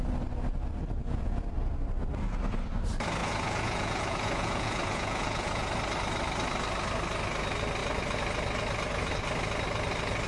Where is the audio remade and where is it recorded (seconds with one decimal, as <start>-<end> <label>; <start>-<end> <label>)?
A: 0.0-1.0 recorded; 1.0-1.5 remade; 1.5-3.2 recorded; 3.2-5.7 remade; 5.7-10.3 recorded